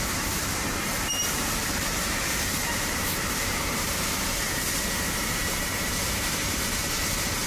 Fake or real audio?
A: fake